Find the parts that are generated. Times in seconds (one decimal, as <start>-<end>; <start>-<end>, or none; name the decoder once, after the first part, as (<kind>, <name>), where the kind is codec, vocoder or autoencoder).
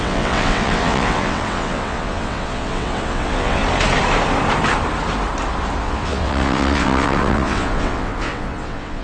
0.0-3.6 (vocoder, WaveNeXt); 5.8-9.0